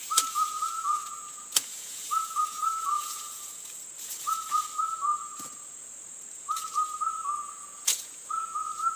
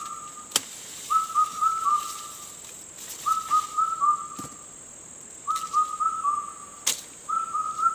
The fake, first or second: first